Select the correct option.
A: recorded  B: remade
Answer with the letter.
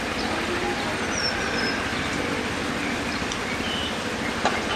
A